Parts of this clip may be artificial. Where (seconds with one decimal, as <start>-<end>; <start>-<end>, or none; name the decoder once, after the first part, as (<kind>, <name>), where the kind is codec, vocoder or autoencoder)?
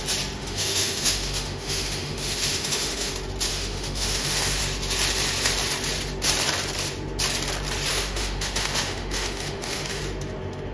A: 0.4-3.1 (autoencoder, DAC-VAE); 3.5-4.6; 7.9-10.0